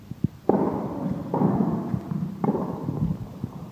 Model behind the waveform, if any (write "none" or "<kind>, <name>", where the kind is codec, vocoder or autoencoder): none